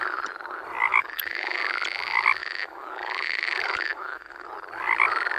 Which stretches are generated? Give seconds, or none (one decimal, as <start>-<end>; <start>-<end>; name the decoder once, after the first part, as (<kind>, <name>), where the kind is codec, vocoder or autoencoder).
0.9-1.6 (autoencoder, DAC-VAE); 2.4-4.5